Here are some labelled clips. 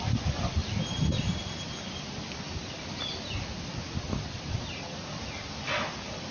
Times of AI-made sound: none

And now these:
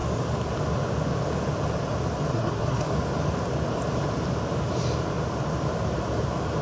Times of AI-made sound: 2.3-2.9 (codec, SNAC)

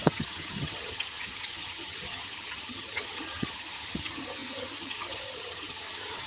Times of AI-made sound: 0.0-6.3 (vocoder, HiFi-GAN)